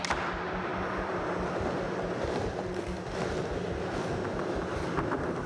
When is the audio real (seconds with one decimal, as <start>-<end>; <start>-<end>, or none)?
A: 0.0-5.5